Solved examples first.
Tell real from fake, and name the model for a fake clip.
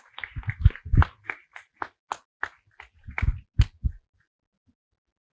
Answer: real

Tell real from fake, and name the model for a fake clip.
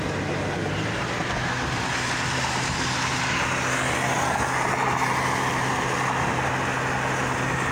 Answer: real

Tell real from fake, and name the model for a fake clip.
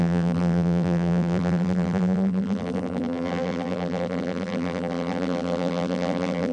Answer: fake, vocoder, BigVGAN v2